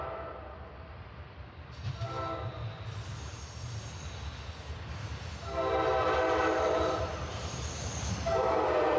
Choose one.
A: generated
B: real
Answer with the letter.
B